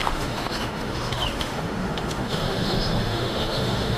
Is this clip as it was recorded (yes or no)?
no